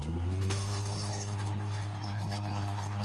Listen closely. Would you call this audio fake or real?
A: fake